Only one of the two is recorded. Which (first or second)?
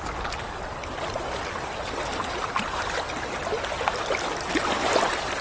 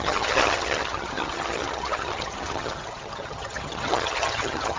first